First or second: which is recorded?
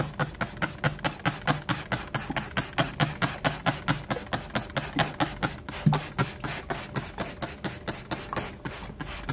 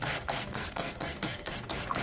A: first